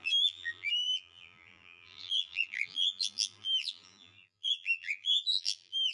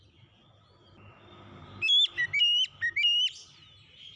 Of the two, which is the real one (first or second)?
second